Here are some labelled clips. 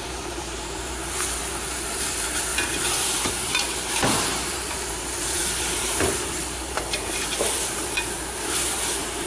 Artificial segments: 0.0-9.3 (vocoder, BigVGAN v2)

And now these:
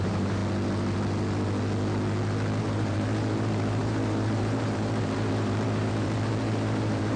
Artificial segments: 0.0-0.4 (vocoder, BigVGAN v2); 2.6-7.2

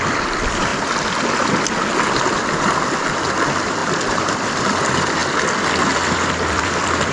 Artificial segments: 0.0-0.7 (vocoder, BigVGAN v2); 2.6-5.2; 5.8-7.1

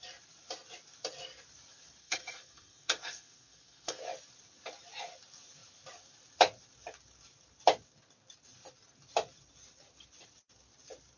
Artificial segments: 2.0-4.0 (codec, SNAC)

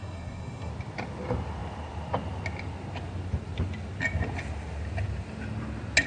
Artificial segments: 0.0-0.7 (codec, SNAC)

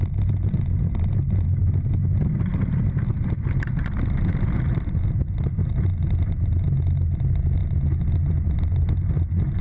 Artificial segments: none

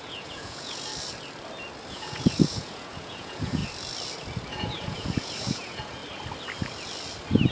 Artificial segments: 0.0-0.9 (vocoder, Vocos); 1.9-3.6; 4.5-6.0

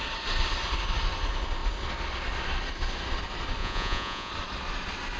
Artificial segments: 3.6-4.3 (vocoder, Vocos)